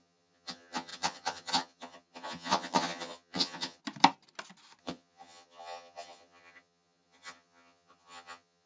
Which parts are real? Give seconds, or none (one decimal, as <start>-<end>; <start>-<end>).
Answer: 3.8-4.8